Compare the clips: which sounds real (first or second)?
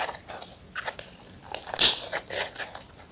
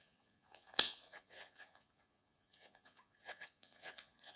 first